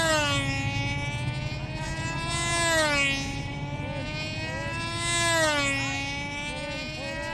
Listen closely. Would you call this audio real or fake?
real